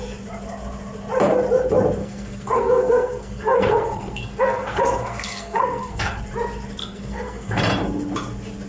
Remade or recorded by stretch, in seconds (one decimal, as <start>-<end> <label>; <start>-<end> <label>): 0.0-2.0 recorded; 2.0-6.2 remade; 6.2-6.8 recorded; 6.8-7.6 remade; 7.6-8.7 recorded